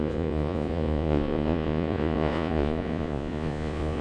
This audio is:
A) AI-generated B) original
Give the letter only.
A